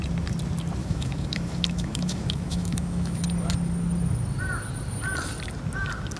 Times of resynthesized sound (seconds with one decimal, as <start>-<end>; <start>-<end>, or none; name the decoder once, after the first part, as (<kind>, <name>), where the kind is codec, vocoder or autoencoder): 0.8-3.2 (autoencoder, DAC-VAE)